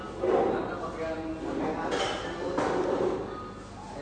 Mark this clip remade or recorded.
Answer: recorded